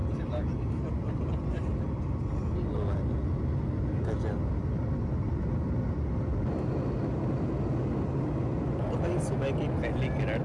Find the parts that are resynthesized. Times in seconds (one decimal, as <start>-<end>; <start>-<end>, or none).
none